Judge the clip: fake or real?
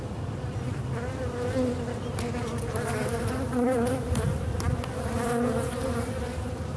real